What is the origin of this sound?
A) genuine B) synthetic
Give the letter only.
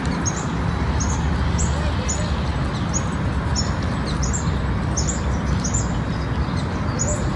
A